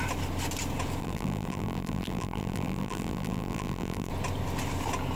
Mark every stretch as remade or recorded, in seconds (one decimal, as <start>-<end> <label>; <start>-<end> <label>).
0.0-1.0 recorded; 1.0-4.1 remade; 4.1-5.2 recorded